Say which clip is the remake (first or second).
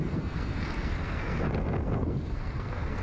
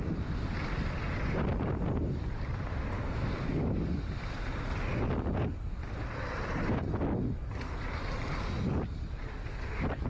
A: first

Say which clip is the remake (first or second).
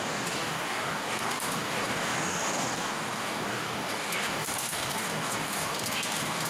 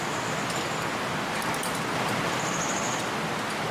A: first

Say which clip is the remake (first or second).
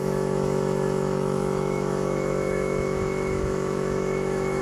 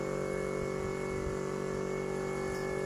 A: first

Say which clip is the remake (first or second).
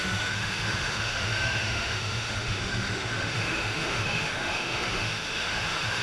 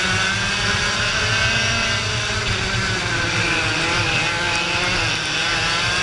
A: first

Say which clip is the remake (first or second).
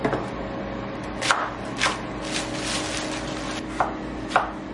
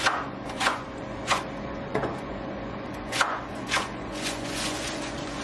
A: second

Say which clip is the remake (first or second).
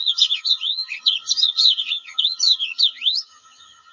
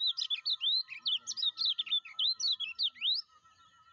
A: first